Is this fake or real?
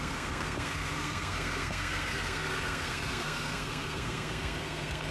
fake